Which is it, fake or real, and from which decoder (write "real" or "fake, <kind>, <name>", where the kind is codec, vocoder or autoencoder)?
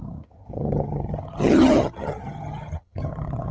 fake, vocoder, HiFi-GAN